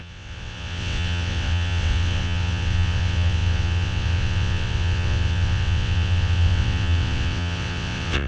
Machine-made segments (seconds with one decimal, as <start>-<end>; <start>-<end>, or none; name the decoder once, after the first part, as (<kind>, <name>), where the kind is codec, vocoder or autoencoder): 0.0-8.3 (vocoder, WaveNeXt)